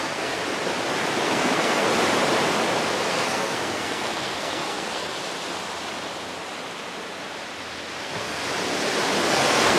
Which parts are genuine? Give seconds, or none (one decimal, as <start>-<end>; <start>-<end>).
0.4-1.2; 1.9-3.1; 5.1-8.0; 8.4-9.3